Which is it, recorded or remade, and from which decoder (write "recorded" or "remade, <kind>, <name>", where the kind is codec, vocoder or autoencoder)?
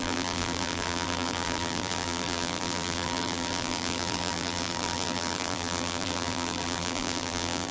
remade, vocoder, BigVGAN v2